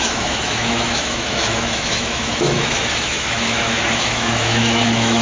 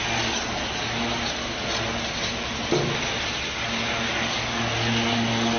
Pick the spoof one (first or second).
first